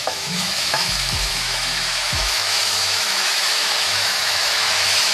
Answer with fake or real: fake